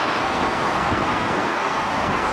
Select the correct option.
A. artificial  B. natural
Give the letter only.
A